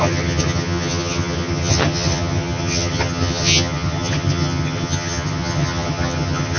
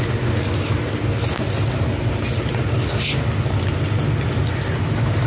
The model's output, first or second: first